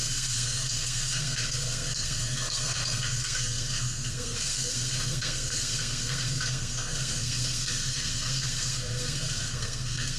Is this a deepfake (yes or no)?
yes